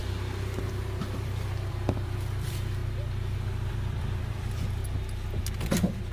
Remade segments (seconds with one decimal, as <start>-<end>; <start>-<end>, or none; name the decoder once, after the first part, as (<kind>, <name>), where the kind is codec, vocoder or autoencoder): 0.7-2.8 (vocoder, BigVGAN v2); 3.7-4.8; 5.6-6.1